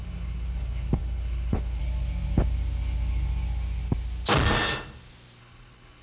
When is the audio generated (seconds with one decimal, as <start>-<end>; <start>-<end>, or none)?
0.0-1.8; 5.4-6.0